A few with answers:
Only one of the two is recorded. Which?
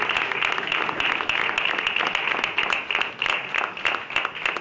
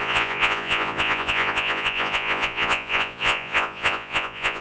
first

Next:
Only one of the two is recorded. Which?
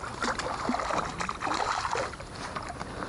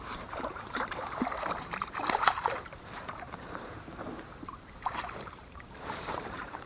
first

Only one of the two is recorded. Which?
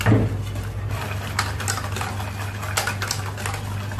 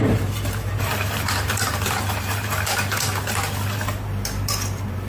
first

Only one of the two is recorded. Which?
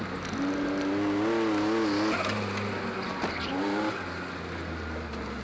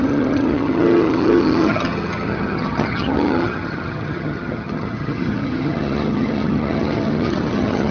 first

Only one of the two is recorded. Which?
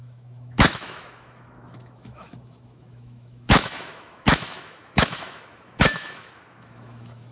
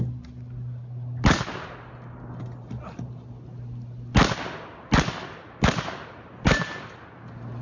second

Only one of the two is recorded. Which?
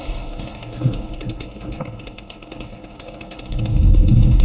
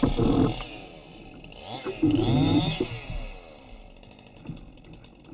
second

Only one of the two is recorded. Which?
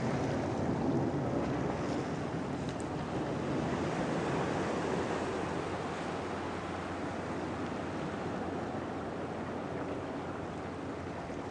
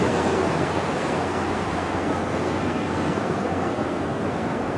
first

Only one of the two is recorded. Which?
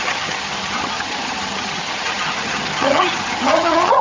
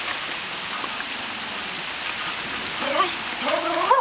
second